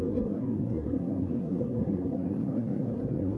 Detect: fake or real fake